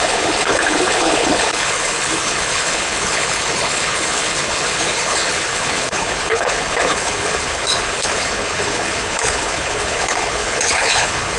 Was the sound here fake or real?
fake